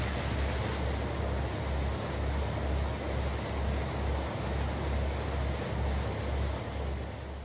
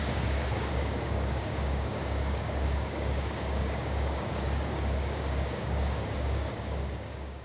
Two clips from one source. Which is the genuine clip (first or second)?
first